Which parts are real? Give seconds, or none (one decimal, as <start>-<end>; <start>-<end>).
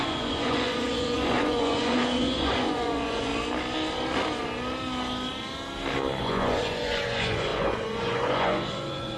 3.3-6.2